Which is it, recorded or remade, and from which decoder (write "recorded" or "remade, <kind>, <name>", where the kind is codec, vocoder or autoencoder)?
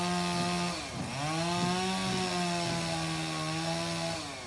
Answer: recorded